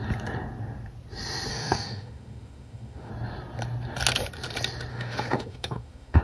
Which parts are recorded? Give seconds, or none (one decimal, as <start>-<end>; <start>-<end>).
0.0-1.5; 3.1-4.9

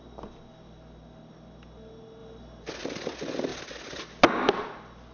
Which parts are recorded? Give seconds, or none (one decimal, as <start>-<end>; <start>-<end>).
0.0-5.1